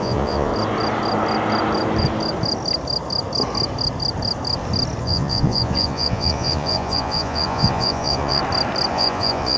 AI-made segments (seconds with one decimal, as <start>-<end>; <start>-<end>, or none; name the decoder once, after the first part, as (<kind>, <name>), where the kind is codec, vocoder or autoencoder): 0.0-0.5 (vocoder, Vocos); 5.0-8.4; 8.9-9.6